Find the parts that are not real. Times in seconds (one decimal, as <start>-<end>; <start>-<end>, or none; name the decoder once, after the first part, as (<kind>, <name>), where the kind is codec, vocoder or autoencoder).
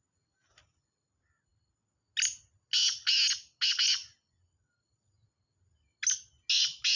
none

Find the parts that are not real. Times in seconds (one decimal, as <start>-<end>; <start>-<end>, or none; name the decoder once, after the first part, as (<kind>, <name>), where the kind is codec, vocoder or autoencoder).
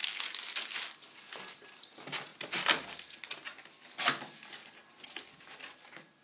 none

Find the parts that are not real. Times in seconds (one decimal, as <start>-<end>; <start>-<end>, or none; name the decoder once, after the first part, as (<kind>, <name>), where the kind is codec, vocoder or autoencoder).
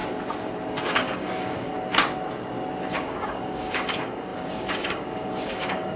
0.8-1.7 (codec, DAC); 3.0-6.0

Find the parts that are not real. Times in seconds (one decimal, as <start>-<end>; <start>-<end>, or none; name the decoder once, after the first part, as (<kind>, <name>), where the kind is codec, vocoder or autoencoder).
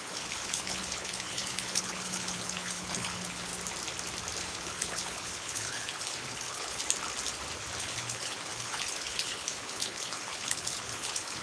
0.0-3.5 (codec, HILCodec); 4.4-6.8; 7.8-11.4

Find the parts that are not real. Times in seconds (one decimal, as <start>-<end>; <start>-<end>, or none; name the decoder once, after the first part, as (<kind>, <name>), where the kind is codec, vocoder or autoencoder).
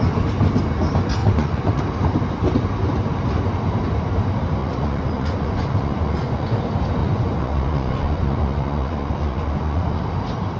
1.2-1.8 (vocoder, Vocos); 4.6-6.6; 7.0-10.0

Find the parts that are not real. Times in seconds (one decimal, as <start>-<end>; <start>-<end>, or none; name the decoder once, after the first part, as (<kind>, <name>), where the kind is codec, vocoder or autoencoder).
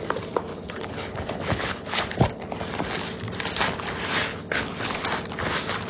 0.5-2.4 (codec, HILCodec); 4.3-5.0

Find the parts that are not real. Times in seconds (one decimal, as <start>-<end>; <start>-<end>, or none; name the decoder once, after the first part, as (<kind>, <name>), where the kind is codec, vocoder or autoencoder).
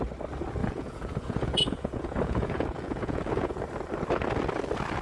0.6-3.6 (vocoder, Vocos)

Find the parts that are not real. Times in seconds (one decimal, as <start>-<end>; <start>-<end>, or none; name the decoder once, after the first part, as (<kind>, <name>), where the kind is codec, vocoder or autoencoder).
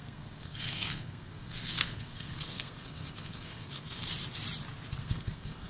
0.0-4.0 (codec, SNAC); 5.0-5.7